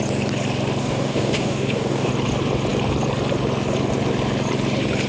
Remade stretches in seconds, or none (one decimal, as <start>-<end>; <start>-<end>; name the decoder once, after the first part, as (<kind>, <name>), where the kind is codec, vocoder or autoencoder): 0.8-2.1 (codec, DAC)